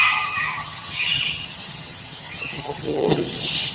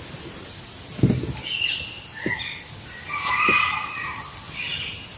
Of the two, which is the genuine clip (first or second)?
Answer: second